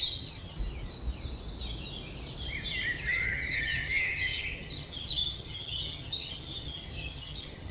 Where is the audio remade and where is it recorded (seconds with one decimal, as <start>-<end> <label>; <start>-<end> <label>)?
0.0-0.6 remade; 0.6-3.1 recorded; 3.1-7.7 remade